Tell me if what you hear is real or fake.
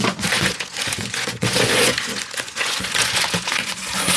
fake